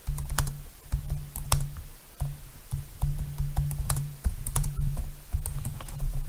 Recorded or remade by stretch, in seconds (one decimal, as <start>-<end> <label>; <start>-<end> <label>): 0.0-3.8 recorded; 3.8-5.0 remade; 5.0-5.7 recorded; 5.7-6.3 remade